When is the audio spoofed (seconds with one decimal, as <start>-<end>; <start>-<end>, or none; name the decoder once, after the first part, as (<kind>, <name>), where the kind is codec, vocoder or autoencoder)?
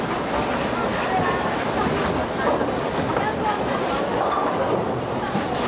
none